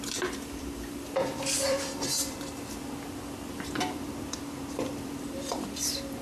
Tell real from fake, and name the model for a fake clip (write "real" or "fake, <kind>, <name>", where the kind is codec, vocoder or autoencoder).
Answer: fake, vocoder, BigVGAN v2